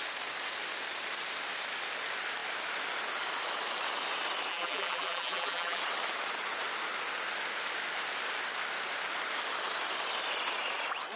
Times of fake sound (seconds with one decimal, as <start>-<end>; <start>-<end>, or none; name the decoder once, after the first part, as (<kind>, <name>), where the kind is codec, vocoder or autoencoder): 4.5-5.8 (vocoder, BigVGAN v2)

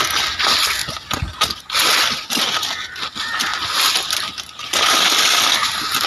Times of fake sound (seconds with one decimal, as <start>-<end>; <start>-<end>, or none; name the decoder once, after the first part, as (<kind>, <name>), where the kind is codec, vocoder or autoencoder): none

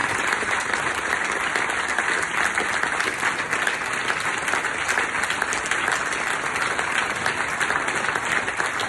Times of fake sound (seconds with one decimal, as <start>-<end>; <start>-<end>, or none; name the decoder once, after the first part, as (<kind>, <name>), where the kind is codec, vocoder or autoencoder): 0.0-1.1 (vocoder, BigVGAN v2)

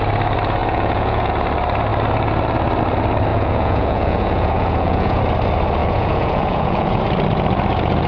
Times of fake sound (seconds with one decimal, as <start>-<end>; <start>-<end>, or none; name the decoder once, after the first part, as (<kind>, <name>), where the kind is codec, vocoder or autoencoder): 0.6-1.3 (vocoder, Vocos); 3.3-5.2; 5.8-7.0

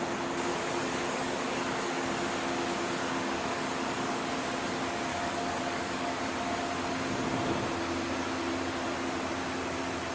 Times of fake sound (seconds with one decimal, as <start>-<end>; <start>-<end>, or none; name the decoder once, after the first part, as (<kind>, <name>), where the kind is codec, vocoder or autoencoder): 0.5-2.1 (codec, DAC); 3.0-4.3; 5.1-6.2

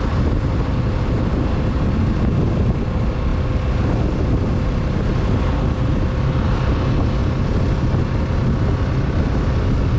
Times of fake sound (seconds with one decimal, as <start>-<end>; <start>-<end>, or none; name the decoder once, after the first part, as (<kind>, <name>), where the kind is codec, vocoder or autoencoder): none

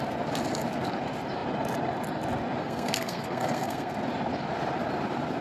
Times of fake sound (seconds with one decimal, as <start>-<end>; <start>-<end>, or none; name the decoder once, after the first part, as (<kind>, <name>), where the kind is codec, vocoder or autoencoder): 2.6-3.9 (codec, SNAC)

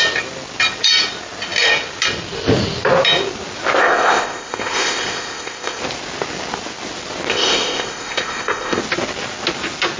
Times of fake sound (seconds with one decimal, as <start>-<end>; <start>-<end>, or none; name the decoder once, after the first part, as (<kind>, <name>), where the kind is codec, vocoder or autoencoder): 3.8-5.8 (codec, ZipCodec); 7.3-8.8